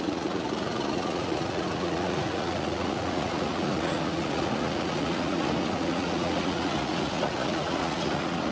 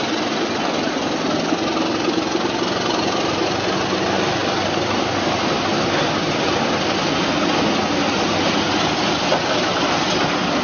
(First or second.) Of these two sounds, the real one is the second